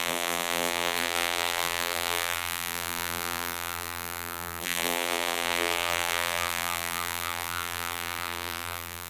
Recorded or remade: remade